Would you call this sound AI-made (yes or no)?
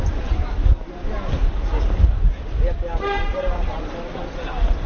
no